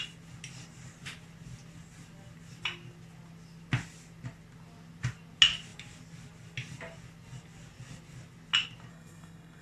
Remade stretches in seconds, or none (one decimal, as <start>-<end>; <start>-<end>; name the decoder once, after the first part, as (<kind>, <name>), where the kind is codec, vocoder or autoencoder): 8.9-9.6 (codec, SNAC)